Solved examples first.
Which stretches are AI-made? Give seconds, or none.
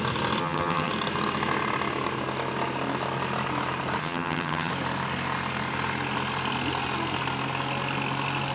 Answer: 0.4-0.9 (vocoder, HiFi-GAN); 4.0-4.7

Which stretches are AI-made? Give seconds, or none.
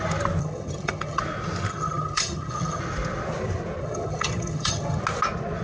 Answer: 0.4-1.2 (vocoder, HiFi-GAN); 1.7-2.8; 3.8-5.0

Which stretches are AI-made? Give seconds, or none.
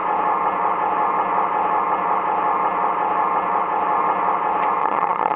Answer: 4.8-5.4 (vocoder, HiFi-GAN)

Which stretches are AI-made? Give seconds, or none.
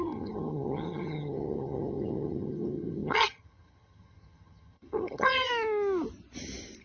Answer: 0.0-5.5 (vocoder, HiFi-GAN)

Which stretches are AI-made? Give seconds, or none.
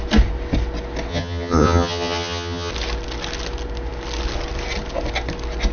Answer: 1.1-2.7 (vocoder, HiFi-GAN)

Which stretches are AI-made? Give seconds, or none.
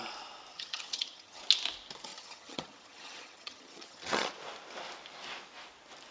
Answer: 0.5-1.4 (vocoder, HiFi-GAN); 2.1-4.3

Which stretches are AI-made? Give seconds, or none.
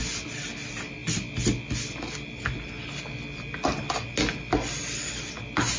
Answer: none